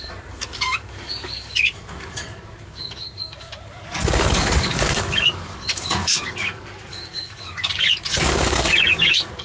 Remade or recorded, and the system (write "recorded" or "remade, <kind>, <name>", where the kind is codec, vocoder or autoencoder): remade, codec, DAC